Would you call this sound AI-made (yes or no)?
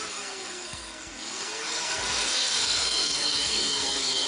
yes